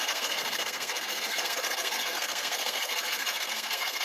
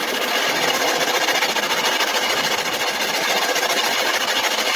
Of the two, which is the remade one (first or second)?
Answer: first